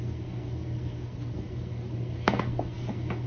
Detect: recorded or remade remade